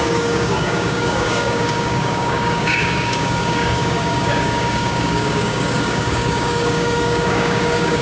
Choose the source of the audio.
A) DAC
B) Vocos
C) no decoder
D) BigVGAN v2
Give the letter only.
A